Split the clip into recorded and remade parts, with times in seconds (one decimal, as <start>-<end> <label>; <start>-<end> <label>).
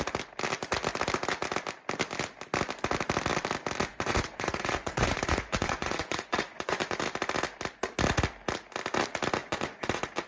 0.0-3.9 recorded; 3.9-7.0 remade; 7.0-9.4 recorded; 9.4-10.3 remade